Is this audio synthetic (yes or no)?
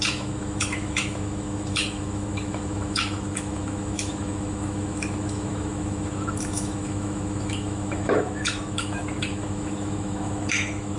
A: yes